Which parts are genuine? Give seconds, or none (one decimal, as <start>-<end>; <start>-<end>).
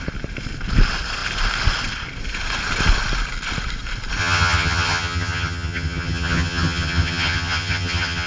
0.0-4.2